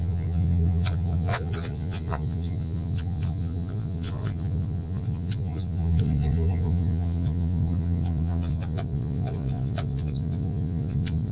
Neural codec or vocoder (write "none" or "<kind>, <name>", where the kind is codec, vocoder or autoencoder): vocoder, Vocos